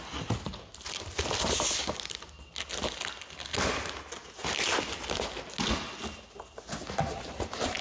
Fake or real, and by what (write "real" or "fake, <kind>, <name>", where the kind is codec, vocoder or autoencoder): real